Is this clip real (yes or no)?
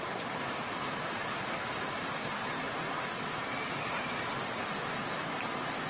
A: yes